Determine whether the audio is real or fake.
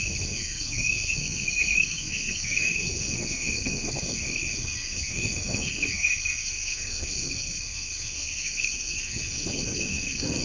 fake